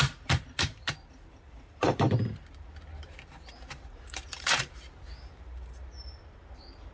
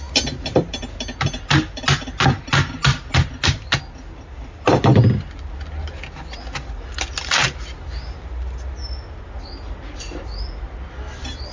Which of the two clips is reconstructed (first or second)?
first